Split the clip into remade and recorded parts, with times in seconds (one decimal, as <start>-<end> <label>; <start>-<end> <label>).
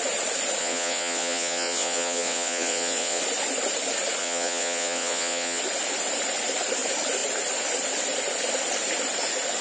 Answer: 0.0-0.6 recorded; 0.6-3.2 remade; 3.2-4.2 recorded; 4.2-5.6 remade; 5.6-9.6 recorded